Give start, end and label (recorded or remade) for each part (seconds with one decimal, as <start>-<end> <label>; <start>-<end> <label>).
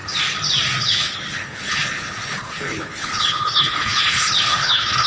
0.0-0.8 recorded; 0.8-5.1 remade